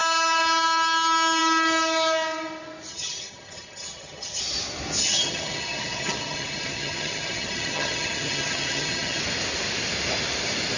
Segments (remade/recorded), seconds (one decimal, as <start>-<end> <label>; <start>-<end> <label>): 0.0-2.9 recorded; 2.9-4.4 remade; 4.4-5.0 recorded; 5.0-9.2 remade; 9.2-10.8 recorded